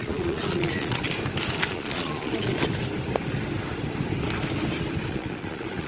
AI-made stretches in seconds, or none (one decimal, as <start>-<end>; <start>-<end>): 0.0-1.0; 1.7-2.5; 5.1-5.9